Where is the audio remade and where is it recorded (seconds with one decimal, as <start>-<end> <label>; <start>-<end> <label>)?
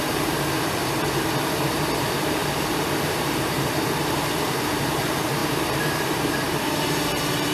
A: 0.0-0.8 remade; 0.8-1.7 recorded; 1.7-7.5 remade